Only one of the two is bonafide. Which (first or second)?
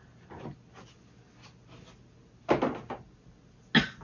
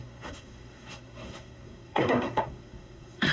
first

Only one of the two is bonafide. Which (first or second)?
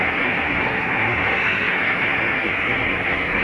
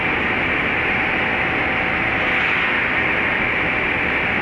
second